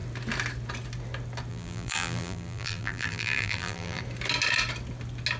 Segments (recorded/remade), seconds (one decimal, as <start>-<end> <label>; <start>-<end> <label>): 0.0-1.5 recorded; 1.5-4.0 remade; 4.0-5.4 recorded